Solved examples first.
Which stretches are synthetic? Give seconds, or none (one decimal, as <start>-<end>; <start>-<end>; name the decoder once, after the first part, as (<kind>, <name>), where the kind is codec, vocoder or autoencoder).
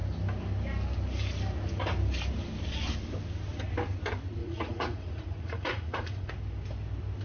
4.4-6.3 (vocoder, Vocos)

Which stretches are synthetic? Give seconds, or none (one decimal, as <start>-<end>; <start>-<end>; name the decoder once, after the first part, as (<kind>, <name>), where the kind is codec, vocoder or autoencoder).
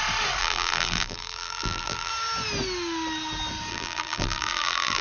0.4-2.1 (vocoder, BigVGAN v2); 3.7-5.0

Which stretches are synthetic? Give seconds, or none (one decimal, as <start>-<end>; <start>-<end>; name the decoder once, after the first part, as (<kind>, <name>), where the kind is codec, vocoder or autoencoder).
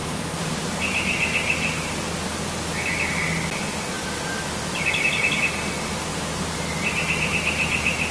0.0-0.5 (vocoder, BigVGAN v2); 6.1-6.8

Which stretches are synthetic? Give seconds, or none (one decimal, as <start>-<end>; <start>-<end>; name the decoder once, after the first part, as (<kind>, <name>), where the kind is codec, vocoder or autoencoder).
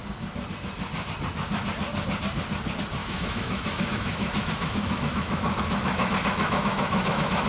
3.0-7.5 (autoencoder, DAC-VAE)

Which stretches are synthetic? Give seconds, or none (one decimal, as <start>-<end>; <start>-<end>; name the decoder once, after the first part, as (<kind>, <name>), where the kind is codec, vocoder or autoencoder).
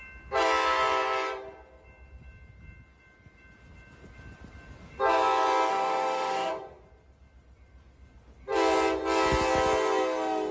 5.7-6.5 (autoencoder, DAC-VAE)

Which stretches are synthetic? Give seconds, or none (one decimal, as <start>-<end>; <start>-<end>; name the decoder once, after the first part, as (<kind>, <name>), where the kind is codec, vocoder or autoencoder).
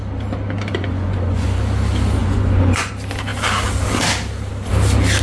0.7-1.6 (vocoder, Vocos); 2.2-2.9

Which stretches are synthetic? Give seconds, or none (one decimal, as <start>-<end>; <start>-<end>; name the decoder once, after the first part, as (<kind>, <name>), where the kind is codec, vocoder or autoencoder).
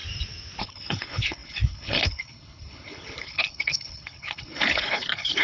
0.6-5.4 (codec, HILCodec)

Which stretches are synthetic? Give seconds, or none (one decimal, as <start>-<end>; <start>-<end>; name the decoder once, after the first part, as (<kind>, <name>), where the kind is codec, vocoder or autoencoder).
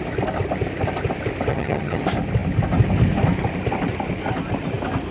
1.5-2.0 (vocoder, HiFi-GAN)